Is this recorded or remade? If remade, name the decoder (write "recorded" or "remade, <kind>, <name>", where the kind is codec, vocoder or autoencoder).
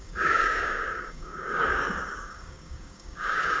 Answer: remade, codec, DAC